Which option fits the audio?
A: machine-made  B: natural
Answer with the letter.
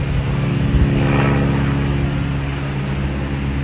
B